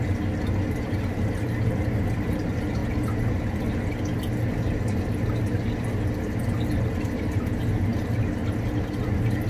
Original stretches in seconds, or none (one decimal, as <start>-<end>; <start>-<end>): 0.0-9.5